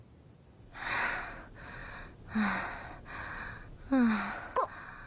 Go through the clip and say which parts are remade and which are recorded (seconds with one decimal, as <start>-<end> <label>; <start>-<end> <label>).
0.0-5.1 recorded